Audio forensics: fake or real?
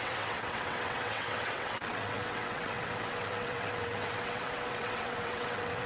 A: fake